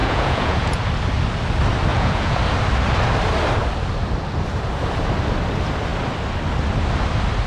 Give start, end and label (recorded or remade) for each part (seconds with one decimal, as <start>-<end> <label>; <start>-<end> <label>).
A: 0.0-0.8 remade; 0.8-1.9 recorded; 1.9-2.4 remade; 2.4-7.5 recorded